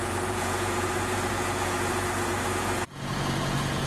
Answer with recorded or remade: remade